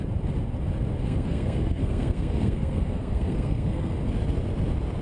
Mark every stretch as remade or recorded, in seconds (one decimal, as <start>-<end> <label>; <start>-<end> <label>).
0.0-0.9 recorded; 0.9-3.9 remade; 3.9-5.0 recorded